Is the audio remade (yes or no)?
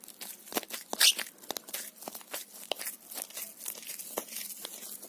no